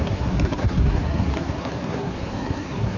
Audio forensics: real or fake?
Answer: fake